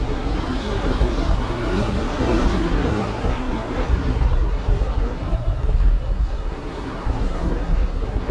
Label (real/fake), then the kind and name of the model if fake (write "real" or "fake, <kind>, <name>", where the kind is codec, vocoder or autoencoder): fake, codec, SNAC